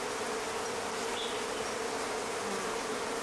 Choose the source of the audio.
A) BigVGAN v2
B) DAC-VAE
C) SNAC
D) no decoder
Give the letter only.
D